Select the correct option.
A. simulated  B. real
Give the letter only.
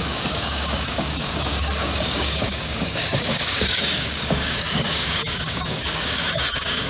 A